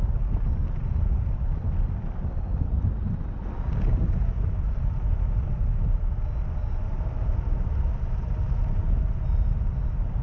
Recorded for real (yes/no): yes